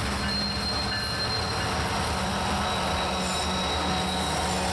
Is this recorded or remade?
recorded